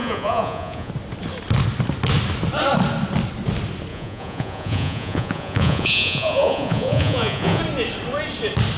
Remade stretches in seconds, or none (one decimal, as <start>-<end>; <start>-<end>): 0.0-0.9; 3.9-7.6